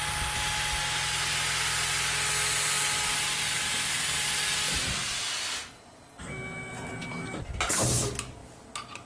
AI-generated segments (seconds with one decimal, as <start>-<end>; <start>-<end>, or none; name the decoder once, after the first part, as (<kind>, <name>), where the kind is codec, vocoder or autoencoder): none